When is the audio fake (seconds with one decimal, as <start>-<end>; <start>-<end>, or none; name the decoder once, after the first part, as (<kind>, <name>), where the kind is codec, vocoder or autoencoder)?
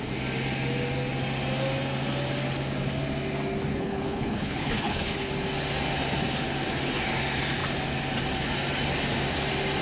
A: 3.7-5.3 (codec, HILCodec)